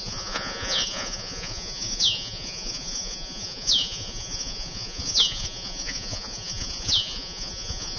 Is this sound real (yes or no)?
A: no